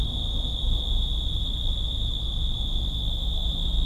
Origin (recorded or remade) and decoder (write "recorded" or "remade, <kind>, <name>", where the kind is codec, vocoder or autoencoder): recorded